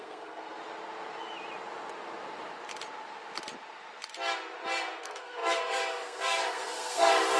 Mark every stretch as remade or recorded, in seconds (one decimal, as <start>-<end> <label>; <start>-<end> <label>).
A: 0.0-0.6 remade; 0.6-5.0 recorded; 5.0-7.4 remade

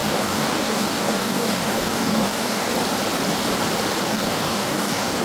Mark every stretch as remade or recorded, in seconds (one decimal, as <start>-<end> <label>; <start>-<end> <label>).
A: 0.0-2.7 remade; 2.7-4.0 recorded; 4.0-5.2 remade

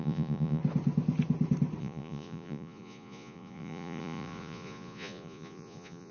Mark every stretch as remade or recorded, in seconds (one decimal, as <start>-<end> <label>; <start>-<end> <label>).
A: 0.0-0.6 remade; 0.6-1.8 recorded; 1.8-6.1 remade